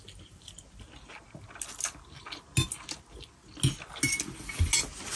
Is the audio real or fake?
real